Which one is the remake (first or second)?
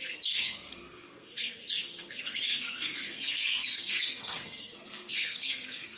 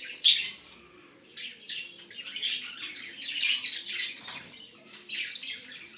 first